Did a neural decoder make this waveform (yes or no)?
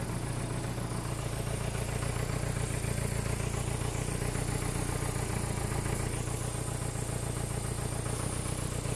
no